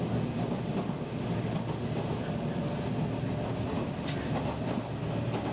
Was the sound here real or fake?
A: real